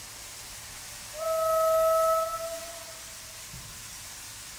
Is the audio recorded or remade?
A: recorded